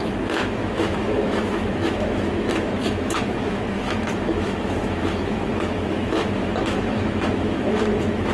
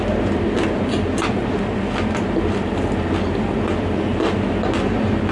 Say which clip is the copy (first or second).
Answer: first